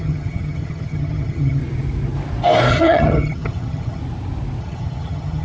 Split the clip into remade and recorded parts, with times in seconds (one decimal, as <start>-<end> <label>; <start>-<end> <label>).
0.0-1.6 remade; 1.6-2.7 recorded; 2.7-4.0 remade; 4.0-4.6 recorded; 4.6-5.4 remade